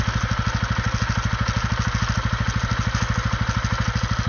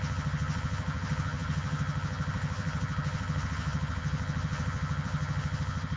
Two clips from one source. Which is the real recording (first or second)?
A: first